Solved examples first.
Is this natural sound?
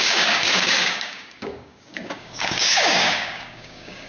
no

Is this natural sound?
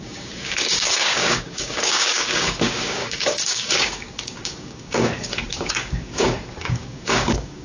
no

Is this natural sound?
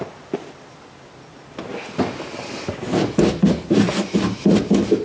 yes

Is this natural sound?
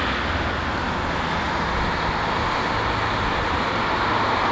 yes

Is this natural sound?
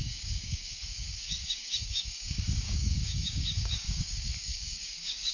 no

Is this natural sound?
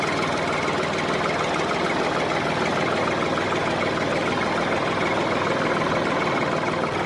yes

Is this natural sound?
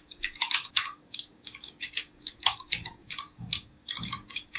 no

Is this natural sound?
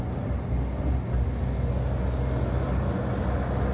yes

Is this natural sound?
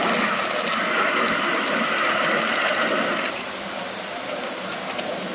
yes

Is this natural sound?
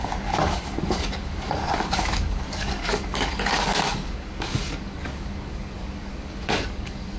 no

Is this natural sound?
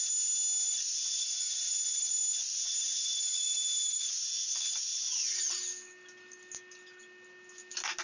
yes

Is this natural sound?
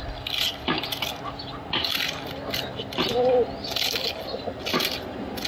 yes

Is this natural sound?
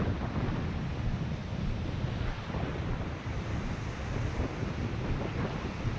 yes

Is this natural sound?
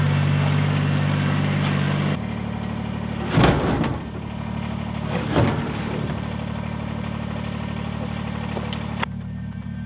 yes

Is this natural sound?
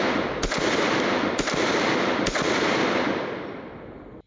yes